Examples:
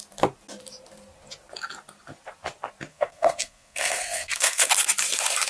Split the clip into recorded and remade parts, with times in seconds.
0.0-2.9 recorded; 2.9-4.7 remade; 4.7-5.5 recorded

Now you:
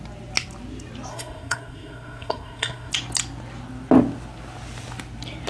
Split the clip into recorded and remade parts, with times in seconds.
0.0-1.1 recorded; 1.1-2.9 remade; 2.9-5.5 recorded

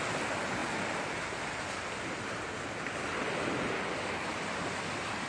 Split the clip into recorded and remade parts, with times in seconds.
0.0-5.3 recorded

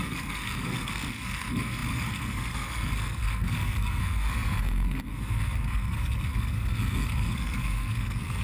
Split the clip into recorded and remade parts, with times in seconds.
0.0-8.4 remade